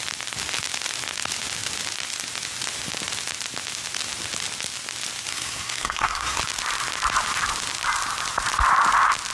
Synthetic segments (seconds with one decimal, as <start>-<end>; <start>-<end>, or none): 5.3-6.4